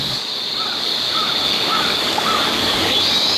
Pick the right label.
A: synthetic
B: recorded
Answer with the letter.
A